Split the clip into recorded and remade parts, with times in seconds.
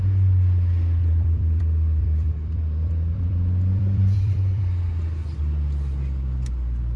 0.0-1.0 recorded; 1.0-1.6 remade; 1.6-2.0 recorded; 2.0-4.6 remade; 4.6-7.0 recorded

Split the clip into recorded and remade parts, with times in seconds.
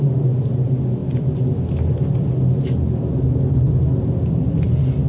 0.0-5.1 recorded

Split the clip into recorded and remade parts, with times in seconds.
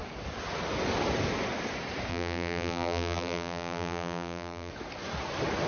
0.0-2.1 recorded; 2.1-4.7 remade; 4.7-5.7 recorded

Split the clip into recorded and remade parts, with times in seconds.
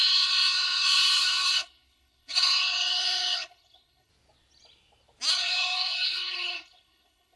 0.0-4.1 remade; 4.1-5.3 recorded; 5.3-7.4 remade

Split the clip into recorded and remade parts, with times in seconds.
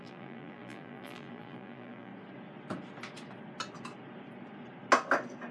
0.0-2.1 remade; 2.1-5.5 recorded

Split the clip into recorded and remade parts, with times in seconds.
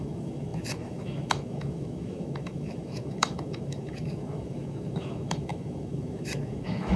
0.0-7.0 remade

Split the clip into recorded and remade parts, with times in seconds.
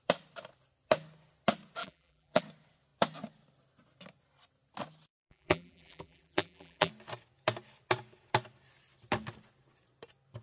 0.0-1.8 recorded; 1.8-2.4 remade; 2.4-5.1 recorded; 5.1-6.9 remade; 6.9-10.4 recorded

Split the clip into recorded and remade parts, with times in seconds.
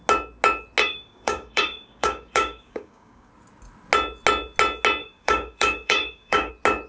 0.0-0.8 recorded; 0.8-3.3 remade; 3.3-5.0 recorded; 5.0-6.5 remade; 6.5-6.9 recorded